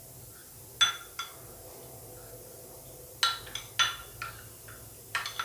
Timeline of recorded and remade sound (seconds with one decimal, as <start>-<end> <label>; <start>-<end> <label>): 0.0-5.4 recorded